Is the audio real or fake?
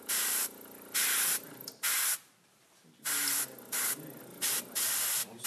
real